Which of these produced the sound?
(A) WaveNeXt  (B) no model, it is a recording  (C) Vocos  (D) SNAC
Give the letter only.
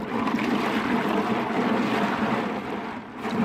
B